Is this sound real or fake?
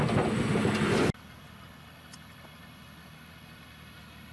real